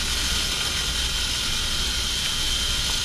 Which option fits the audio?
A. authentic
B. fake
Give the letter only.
A